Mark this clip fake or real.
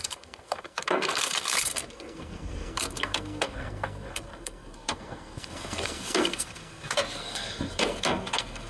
fake